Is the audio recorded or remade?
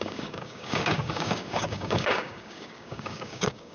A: remade